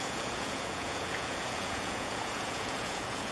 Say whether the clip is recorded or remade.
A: remade